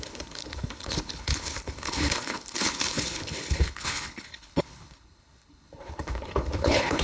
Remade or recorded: remade